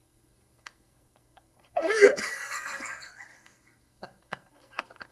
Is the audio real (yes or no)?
no